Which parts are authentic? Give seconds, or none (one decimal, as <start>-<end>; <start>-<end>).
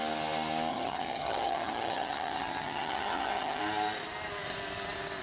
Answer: 0.0-0.7; 3.6-5.2